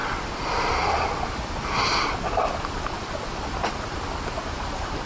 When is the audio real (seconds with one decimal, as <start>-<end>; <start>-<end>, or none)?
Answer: 0.0-5.1